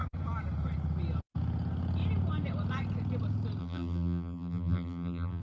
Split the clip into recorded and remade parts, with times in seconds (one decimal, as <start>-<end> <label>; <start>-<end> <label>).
0.0-3.6 recorded; 3.6-5.4 remade

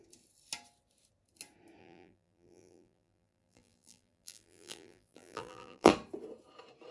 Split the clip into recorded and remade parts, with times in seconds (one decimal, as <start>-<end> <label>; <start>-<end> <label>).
0.0-1.8 recorded; 1.8-5.9 remade; 5.9-6.9 recorded

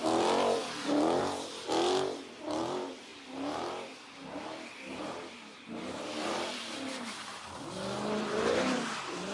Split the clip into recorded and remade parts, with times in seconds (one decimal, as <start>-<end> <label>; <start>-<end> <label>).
0.0-9.3 remade

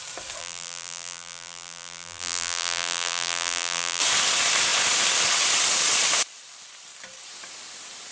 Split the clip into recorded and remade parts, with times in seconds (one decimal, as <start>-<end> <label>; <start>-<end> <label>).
0.0-0.4 recorded; 0.4-4.0 remade; 4.0-8.1 recorded